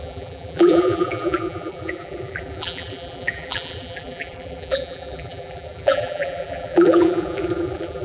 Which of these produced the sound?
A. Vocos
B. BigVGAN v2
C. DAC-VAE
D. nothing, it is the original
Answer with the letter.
B